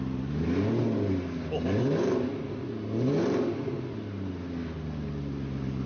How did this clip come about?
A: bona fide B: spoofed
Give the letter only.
A